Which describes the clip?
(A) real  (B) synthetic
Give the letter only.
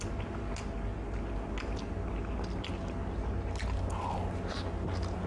A